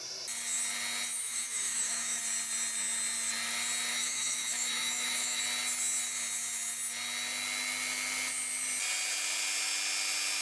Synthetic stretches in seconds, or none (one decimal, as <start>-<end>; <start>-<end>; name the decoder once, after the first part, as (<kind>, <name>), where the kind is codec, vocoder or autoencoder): 1.2-2.2 (autoencoder, DAC-VAE); 3.9-5.4